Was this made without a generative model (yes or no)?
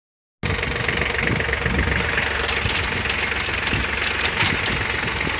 yes